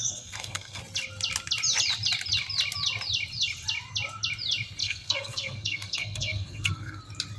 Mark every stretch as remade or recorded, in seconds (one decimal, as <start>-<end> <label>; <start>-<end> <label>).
0.0-0.8 remade; 0.8-4.8 recorded; 4.8-7.0 remade; 7.0-7.4 recorded